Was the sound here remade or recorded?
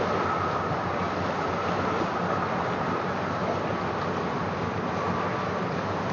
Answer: recorded